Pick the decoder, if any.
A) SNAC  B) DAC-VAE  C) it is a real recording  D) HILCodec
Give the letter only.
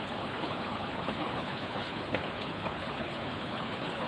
D